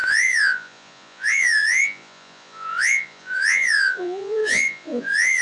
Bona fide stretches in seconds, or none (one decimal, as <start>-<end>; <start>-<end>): none

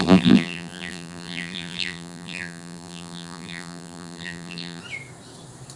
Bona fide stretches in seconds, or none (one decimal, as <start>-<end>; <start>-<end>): 4.8-5.8

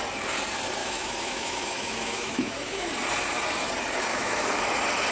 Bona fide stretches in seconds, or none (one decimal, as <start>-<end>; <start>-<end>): 0.0-0.8; 2.9-4.1; 4.6-5.1

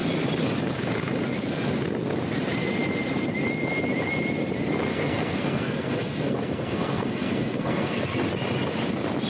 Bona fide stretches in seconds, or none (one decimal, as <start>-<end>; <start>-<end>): 0.0-4.9; 8.0-9.3

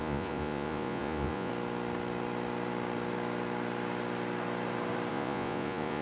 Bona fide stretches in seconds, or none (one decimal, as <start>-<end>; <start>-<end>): 1.5-5.1

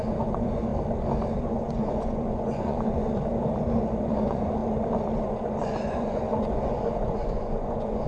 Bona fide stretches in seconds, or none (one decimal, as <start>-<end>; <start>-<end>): 0.7-1.4; 3.3-4.0; 4.6-5.2

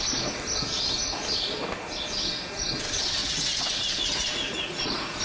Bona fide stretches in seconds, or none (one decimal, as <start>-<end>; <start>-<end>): 0.0-3.2

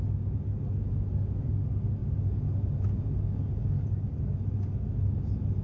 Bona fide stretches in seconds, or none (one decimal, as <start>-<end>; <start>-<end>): 0.0-5.6